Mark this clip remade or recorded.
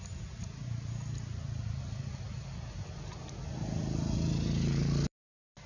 recorded